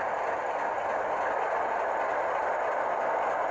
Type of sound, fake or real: real